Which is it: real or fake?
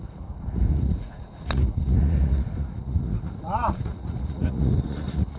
fake